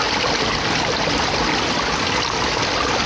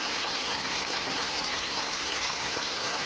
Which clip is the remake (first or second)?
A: second